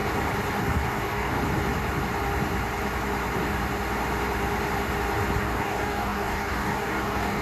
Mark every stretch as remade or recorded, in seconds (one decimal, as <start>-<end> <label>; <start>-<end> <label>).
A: 0.0-0.6 recorded; 0.6-1.4 remade; 1.4-5.4 recorded; 5.4-7.4 remade